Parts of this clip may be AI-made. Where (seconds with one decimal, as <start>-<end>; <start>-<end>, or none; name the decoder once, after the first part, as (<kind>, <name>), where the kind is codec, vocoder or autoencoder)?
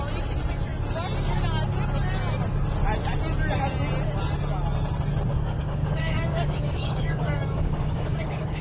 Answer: 5.3-8.6 (codec, DAC)